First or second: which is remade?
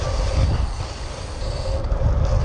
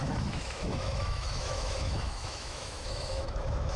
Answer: second